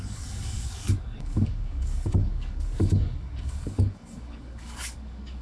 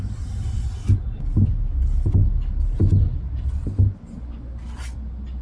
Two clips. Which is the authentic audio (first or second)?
second